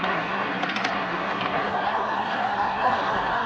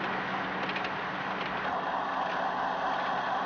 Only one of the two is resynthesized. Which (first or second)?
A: first